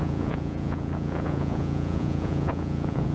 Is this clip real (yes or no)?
no